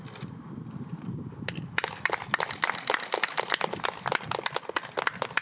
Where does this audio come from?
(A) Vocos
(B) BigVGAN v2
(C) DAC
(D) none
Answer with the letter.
D